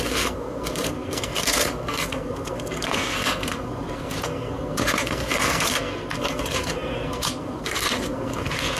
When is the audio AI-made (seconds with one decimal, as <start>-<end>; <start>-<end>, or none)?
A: 0.0-8.8